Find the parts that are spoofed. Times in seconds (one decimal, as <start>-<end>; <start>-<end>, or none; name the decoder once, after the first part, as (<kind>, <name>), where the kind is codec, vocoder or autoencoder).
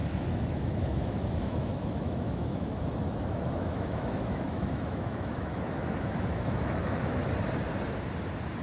0.0-7.2 (autoencoder, DAC-VAE)